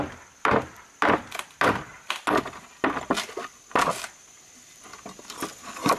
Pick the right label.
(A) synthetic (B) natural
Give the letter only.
B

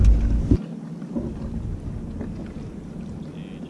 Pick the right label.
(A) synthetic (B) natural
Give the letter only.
B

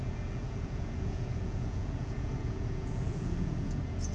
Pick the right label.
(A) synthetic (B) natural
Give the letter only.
A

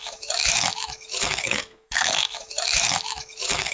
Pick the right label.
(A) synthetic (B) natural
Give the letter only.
A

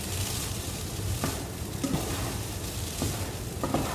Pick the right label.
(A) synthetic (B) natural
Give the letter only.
B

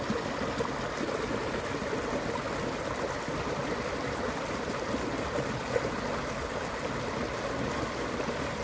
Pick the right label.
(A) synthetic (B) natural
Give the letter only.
B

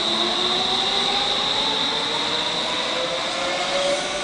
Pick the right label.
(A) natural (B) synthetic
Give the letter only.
A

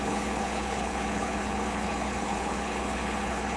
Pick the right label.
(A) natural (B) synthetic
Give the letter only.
B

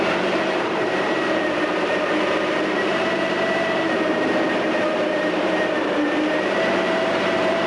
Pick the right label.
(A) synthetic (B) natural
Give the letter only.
A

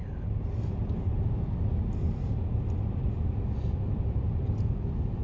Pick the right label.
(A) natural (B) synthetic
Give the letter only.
A